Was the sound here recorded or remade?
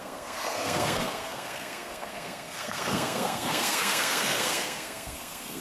remade